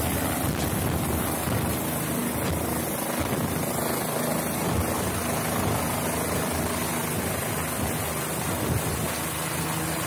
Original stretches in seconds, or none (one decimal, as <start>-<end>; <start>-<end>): 0.0-10.1